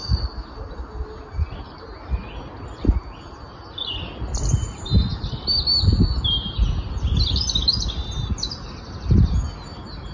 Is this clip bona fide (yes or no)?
yes